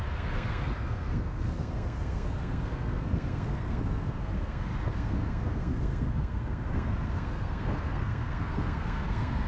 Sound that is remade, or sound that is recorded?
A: remade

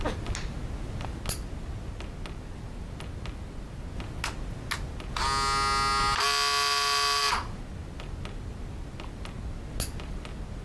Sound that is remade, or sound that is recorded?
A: recorded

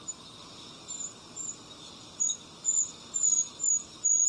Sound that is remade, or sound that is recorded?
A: recorded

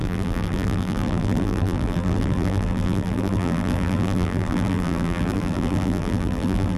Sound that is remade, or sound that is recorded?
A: remade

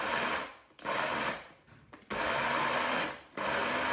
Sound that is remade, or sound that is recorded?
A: remade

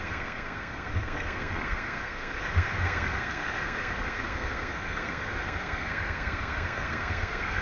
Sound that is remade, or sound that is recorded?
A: remade